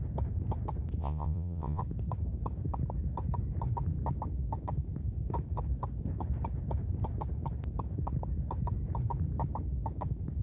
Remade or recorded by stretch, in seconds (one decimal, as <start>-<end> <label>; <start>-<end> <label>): 0.0-1.0 recorded; 1.0-1.8 remade; 1.8-10.4 recorded